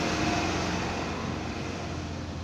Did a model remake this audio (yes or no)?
no